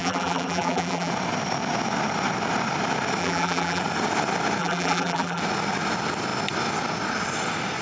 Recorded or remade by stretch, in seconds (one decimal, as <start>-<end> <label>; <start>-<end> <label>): 0.0-1.1 remade; 1.1-3.2 recorded; 3.2-3.8 remade; 3.8-4.6 recorded; 4.6-5.4 remade; 5.4-7.8 recorded